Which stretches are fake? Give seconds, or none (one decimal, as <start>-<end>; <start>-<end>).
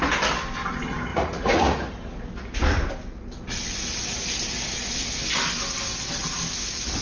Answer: 1.1-1.9